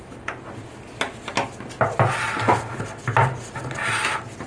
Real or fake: real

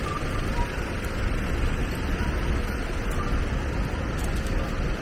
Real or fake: real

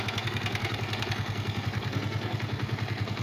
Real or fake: fake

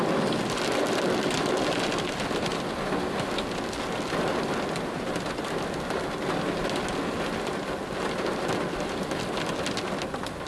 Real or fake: real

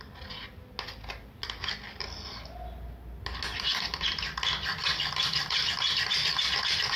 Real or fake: real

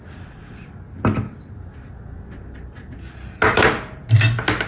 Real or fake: real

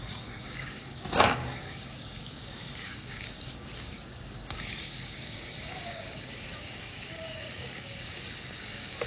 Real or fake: fake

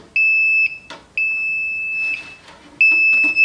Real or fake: real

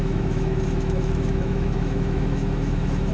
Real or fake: fake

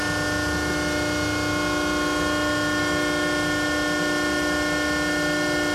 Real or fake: real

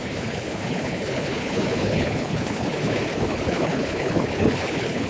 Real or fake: fake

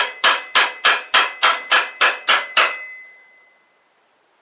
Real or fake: real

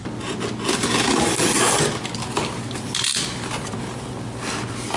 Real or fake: real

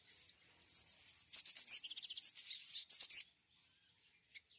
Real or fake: real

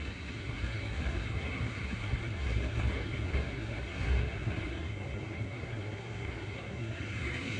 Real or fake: fake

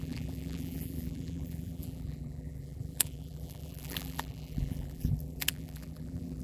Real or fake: fake